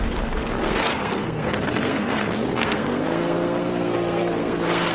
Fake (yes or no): yes